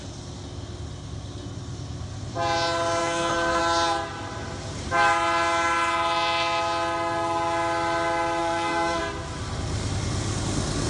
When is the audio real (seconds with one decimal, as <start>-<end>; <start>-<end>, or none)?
0.0-3.0; 3.6-8.4; 9.0-10.9